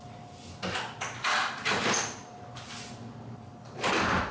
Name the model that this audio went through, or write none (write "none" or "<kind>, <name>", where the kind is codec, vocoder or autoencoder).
none